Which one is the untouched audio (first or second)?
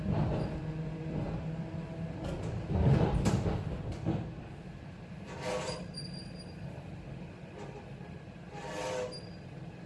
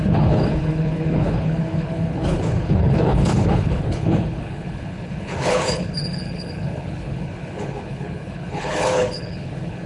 first